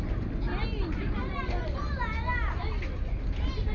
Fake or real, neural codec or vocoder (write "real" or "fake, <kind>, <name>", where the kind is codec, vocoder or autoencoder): real